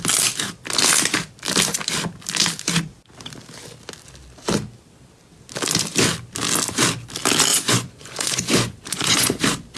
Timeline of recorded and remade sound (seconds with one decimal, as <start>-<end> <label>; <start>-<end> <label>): 0.0-7.5 recorded; 7.5-9.4 remade; 9.4-9.8 recorded